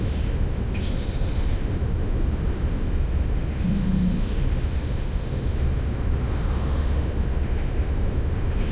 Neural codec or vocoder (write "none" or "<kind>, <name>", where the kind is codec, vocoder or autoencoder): autoencoder, DAC-VAE